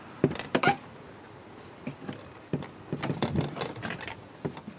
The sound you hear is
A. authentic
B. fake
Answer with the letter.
A